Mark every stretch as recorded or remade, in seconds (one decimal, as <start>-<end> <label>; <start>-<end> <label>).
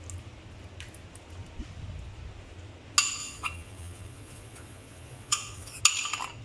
0.0-3.2 recorded; 3.2-5.8 remade; 5.8-6.4 recorded